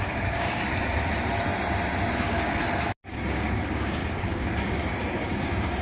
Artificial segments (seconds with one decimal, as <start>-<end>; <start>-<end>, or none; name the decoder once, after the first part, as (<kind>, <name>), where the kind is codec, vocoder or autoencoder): 0.0-0.7 (codec, DAC); 2.2-2.6; 3.1-5.8